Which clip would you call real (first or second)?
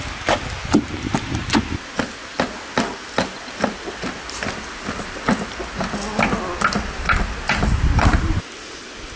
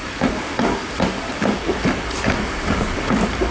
first